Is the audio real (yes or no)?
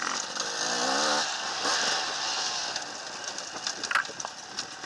yes